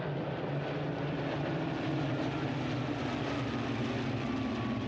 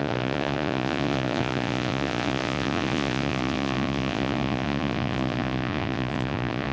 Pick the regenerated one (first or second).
second